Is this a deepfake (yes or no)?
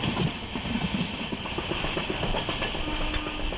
no